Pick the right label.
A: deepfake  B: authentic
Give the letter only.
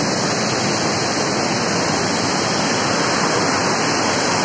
B